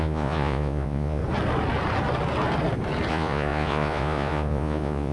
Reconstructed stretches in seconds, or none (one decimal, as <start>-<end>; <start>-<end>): 0.0-1.2; 3.1-5.1